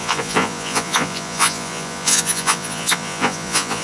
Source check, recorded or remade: remade